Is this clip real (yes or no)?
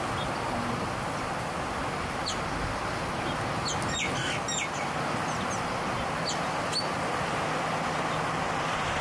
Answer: yes